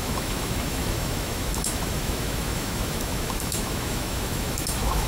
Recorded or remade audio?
remade